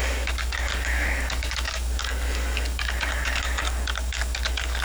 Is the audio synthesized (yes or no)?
yes